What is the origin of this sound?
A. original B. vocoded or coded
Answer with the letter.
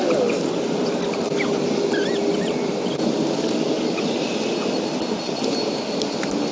A